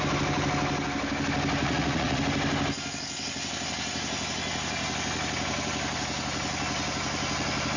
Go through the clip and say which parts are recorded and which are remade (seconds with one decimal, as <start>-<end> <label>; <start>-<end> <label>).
0.0-1.6 recorded; 1.6-2.2 remade; 2.2-7.8 recorded

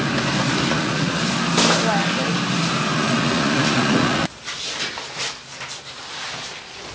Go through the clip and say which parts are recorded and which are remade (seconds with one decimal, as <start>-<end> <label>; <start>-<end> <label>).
0.0-0.7 recorded; 0.7-1.2 remade; 1.2-2.9 recorded; 2.9-4.4 remade; 4.4-6.9 recorded

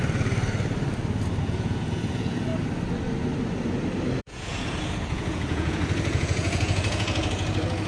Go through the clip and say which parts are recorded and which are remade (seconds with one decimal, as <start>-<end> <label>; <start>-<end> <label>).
0.0-1.4 recorded; 1.4-2.5 remade; 2.5-4.2 recorded; 4.2-7.9 remade

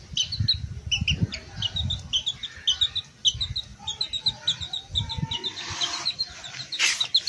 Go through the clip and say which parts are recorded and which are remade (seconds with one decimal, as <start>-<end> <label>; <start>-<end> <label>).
0.0-7.3 recorded